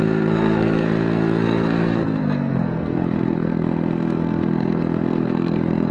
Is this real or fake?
fake